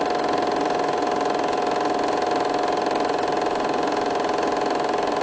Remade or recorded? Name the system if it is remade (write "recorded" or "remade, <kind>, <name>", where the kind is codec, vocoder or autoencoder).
recorded